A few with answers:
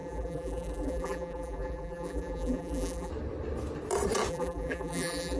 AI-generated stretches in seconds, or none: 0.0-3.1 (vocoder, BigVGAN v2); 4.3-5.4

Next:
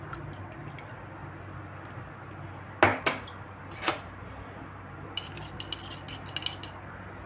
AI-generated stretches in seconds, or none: 2.9-5.6 (vocoder, BigVGAN v2)

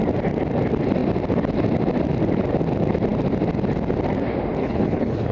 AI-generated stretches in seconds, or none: 4.6-5.3 (codec, HILCodec)